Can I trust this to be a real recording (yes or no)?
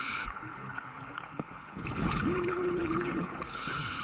no